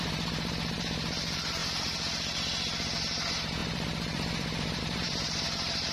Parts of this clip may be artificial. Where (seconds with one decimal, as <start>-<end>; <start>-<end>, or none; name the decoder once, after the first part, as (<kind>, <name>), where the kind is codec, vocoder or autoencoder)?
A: 0.0-1.6 (vocoder, BigVGAN v2); 3.0-5.9